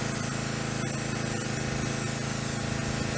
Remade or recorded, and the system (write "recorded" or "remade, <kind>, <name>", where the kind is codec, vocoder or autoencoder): recorded